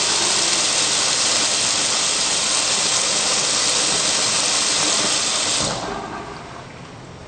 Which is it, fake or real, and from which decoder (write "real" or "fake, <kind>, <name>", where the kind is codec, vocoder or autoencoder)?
real